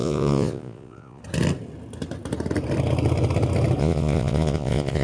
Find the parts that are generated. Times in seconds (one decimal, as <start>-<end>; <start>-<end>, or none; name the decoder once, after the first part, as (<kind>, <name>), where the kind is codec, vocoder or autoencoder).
0.0-1.2 (vocoder, Vocos); 3.8-5.0